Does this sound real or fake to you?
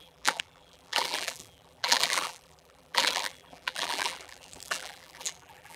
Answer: fake